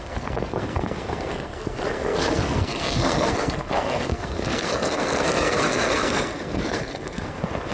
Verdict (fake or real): fake